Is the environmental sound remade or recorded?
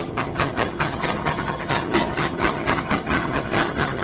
remade